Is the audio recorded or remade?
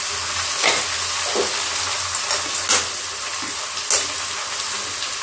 recorded